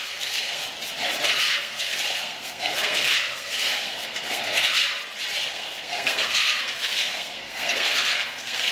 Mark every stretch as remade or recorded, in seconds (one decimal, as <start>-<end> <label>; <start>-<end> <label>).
0.0-0.6 remade; 0.6-1.4 recorded; 1.4-4.8 remade; 4.8-5.5 recorded; 5.5-8.7 remade